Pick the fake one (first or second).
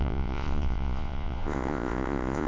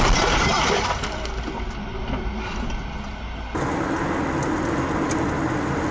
first